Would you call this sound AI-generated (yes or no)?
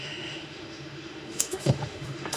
yes